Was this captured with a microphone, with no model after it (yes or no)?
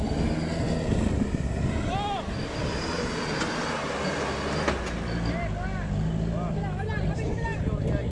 yes